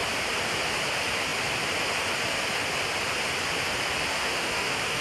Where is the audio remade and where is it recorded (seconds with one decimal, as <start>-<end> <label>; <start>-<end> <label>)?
0.0-4.1 recorded; 4.1-5.0 remade

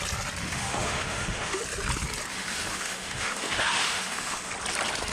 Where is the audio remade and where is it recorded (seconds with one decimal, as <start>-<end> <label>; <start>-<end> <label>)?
0.0-0.4 recorded; 0.4-1.6 remade; 1.6-2.3 recorded; 2.3-4.5 remade; 4.5-5.1 recorded

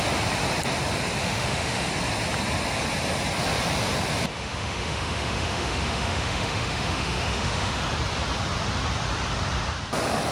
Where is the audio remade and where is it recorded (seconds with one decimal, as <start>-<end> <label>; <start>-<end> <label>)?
0.0-1.2 recorded; 1.2-1.9 remade; 1.9-4.3 recorded; 4.3-7.8 remade; 7.8-10.3 recorded

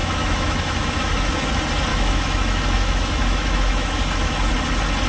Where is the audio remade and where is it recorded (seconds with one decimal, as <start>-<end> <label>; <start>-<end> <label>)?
0.0-1.5 remade; 1.5-1.9 recorded; 1.9-4.5 remade; 4.5-5.1 recorded

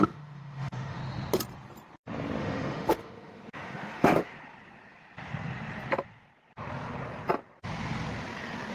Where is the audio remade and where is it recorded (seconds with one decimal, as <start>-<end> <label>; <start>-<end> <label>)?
0.0-1.0 remade; 1.0-2.4 recorded; 2.4-4.3 remade; 4.3-8.7 recorded

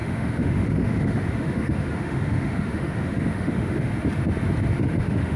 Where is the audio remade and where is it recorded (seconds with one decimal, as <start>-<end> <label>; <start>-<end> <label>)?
0.0-3.9 remade; 3.9-4.8 recorded; 4.8-5.4 remade

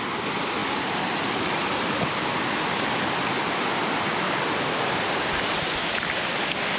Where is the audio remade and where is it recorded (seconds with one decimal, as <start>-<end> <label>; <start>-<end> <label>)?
0.0-6.8 recorded